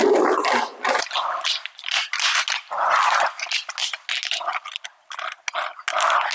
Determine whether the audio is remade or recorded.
recorded